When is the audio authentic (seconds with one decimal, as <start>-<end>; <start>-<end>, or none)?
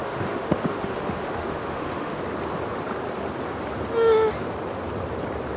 2.2-5.6